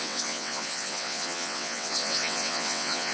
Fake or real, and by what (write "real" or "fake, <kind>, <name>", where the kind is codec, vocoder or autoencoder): fake, vocoder, WaveNeXt